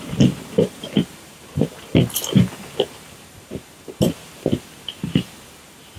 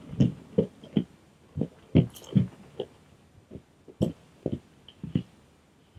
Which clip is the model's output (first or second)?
first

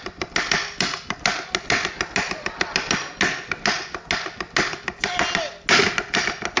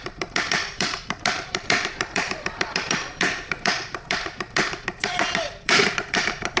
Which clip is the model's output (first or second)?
second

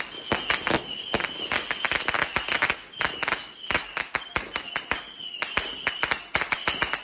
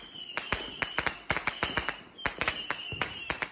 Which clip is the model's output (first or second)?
second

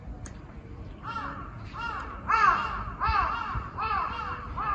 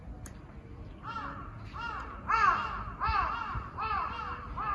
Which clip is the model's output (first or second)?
first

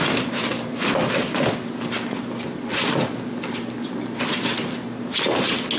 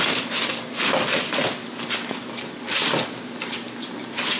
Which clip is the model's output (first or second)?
second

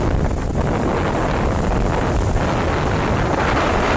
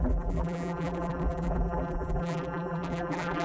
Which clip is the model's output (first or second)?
second